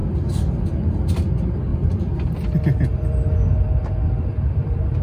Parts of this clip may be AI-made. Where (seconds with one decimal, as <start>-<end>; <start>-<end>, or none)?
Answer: 0.0-0.6; 1.7-5.0